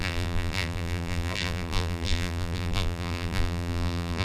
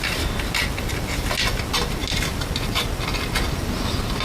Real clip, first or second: second